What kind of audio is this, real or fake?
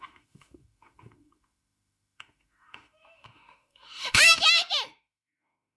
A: fake